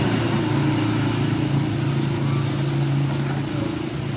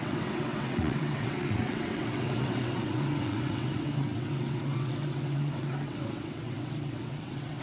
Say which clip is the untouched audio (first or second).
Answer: first